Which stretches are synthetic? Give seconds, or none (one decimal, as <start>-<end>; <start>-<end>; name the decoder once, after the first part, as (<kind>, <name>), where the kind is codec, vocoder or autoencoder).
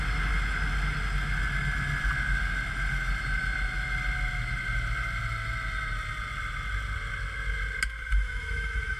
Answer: 8.1-9.0 (autoencoder, DAC-VAE)